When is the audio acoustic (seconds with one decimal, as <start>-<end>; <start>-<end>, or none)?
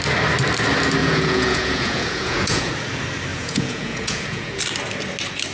0.0-1.0; 2.7-3.3; 4.6-5.5